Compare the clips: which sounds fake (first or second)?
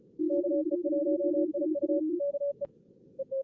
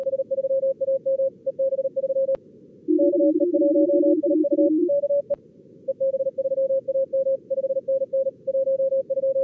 first